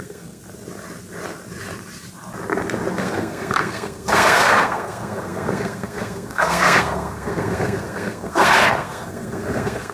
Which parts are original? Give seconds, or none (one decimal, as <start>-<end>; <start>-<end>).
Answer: 0.4-2.9